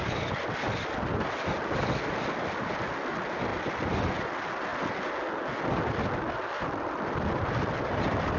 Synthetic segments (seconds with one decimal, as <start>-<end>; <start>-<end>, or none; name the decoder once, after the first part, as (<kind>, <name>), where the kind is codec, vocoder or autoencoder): none